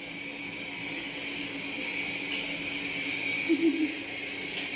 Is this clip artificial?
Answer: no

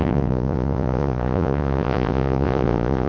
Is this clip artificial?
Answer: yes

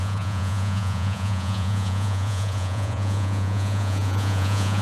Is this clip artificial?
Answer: yes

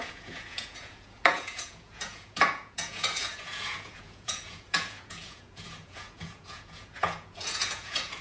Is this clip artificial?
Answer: yes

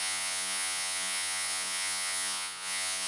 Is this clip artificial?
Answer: yes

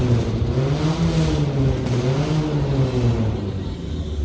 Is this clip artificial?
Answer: no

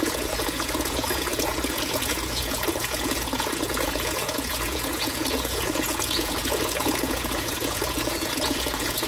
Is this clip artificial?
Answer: yes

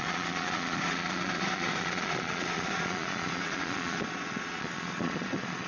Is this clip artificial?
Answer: yes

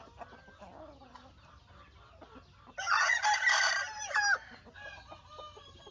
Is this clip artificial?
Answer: no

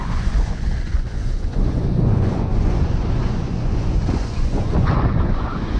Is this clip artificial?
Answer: yes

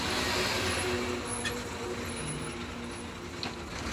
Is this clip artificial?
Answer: no